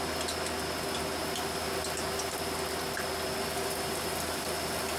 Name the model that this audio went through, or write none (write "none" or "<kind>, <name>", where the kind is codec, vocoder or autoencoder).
none